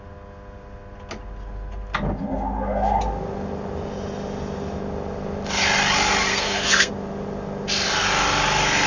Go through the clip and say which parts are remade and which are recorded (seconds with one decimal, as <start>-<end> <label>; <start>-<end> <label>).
0.0-6.3 recorded; 6.3-6.9 remade; 6.9-8.9 recorded